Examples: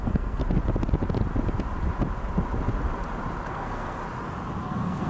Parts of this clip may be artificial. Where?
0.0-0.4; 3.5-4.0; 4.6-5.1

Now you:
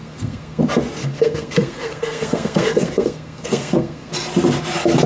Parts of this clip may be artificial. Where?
0.0-0.6; 1.0-4.1

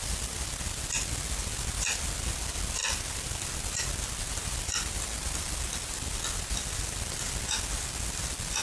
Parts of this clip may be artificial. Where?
none

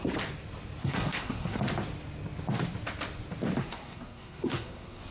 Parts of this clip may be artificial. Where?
0.8-1.6; 3.6-5.1